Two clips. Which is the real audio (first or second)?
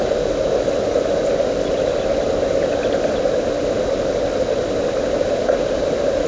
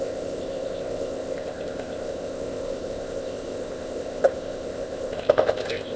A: first